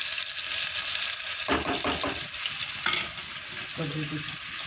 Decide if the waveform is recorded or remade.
recorded